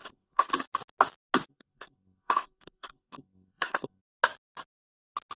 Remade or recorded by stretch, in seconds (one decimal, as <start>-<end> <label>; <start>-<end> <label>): 0.0-0.5 remade; 0.5-1.5 recorded; 1.5-4.0 remade; 4.0-5.4 recorded